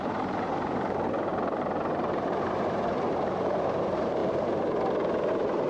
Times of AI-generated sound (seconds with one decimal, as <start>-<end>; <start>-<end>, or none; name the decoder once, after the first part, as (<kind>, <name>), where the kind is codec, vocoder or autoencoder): 0.0-4.2 (vocoder, BigVGAN v2); 5.3-5.7